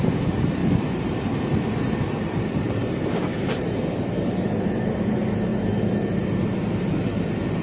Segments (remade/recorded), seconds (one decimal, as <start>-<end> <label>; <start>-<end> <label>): 0.0-0.6 recorded; 0.6-3.8 remade; 3.8-7.6 recorded